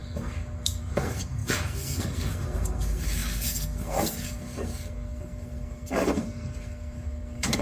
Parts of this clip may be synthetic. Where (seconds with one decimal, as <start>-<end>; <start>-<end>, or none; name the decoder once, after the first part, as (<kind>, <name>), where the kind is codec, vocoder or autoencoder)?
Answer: 0.0-7.6 (codec, SNAC)